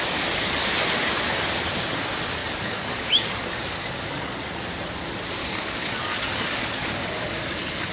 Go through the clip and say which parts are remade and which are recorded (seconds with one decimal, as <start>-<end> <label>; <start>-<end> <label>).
0.0-2.4 recorded; 2.4-4.4 remade; 4.4-5.4 recorded; 5.4-7.9 remade